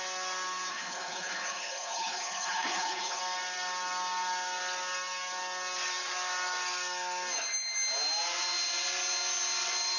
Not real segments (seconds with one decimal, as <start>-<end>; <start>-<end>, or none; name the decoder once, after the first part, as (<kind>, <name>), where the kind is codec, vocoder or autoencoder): 0.7-3.2 (codec, HILCodec)